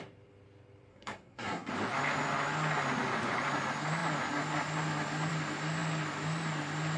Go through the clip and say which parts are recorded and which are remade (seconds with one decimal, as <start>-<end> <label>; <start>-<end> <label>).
0.0-0.9 recorded; 0.9-1.7 remade; 1.7-7.0 recorded